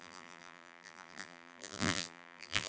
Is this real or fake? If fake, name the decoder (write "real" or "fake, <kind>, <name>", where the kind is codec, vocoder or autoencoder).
fake, vocoder, BigVGAN v2